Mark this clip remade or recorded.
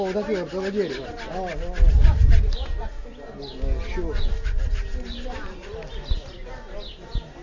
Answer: recorded